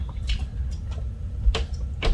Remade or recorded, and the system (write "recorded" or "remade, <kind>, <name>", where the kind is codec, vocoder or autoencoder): remade, vocoder, BigVGAN v2